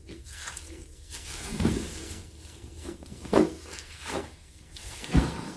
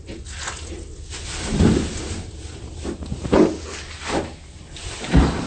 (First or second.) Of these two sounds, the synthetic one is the first